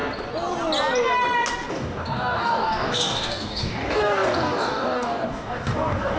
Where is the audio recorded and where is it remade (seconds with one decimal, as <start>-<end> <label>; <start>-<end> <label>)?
0.0-1.7 recorded; 1.7-6.2 remade